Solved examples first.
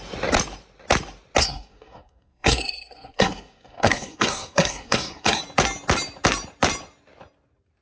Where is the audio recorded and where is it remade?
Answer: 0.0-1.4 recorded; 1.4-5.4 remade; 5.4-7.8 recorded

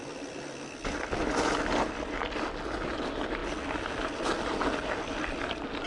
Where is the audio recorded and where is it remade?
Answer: 0.0-5.9 recorded

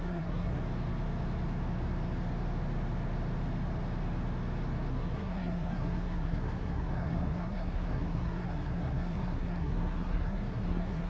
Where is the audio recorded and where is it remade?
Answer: 0.0-0.6 remade; 0.6-4.9 recorded; 4.9-11.1 remade

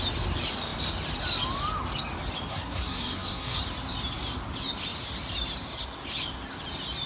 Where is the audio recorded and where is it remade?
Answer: 0.0-2.5 recorded; 2.5-3.6 remade; 3.6-7.1 recorded

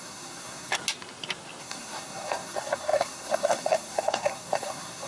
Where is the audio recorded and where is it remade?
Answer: 0.0-0.7 remade; 0.7-1.6 recorded; 1.6-5.1 remade

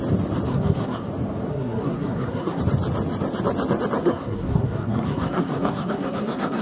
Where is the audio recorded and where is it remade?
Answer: 0.0-0.5 recorded; 0.5-1.1 remade; 1.1-1.5 recorded; 1.5-2.6 remade; 2.6-4.0 recorded; 4.0-6.6 remade